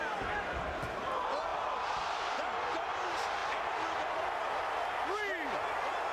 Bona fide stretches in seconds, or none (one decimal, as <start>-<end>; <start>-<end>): 0.0-6.1